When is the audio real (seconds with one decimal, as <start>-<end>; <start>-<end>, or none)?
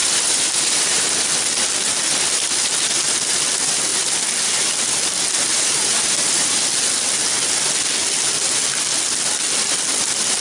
1.1-5.5; 6.6-10.4